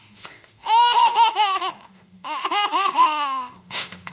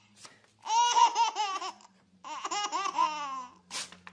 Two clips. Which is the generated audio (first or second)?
first